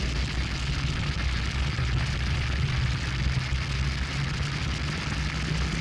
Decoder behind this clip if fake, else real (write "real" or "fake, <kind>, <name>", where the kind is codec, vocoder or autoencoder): real